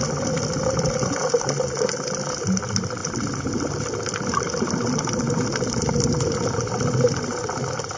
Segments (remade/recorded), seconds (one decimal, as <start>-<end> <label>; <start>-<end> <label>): 0.0-8.0 remade

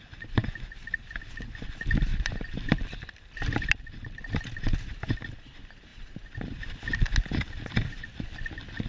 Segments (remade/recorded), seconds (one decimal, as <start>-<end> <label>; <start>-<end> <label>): 0.0-2.1 recorded; 2.1-4.0 remade; 4.0-8.9 recorded

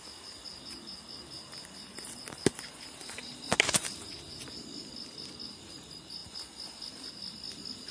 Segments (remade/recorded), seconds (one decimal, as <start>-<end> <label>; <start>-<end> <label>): 0.0-7.9 recorded

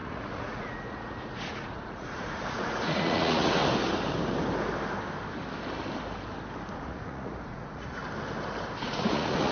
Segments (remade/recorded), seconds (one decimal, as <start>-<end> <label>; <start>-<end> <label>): 0.0-3.6 remade; 3.6-6.7 recorded; 6.7-8.0 remade; 8.0-8.8 recorded; 8.8-9.5 remade